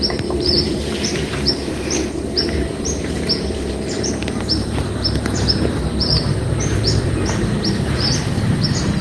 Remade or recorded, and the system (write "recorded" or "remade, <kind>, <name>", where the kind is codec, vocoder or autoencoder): remade, vocoder, BigVGAN v2